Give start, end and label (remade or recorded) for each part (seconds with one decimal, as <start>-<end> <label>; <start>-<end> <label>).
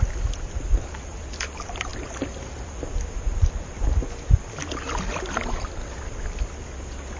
0.0-7.2 recorded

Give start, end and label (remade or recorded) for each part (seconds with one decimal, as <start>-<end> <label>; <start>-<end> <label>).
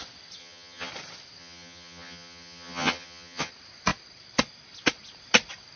0.0-0.4 recorded; 0.4-0.9 remade; 0.9-1.4 recorded; 1.4-3.5 remade; 3.5-5.8 recorded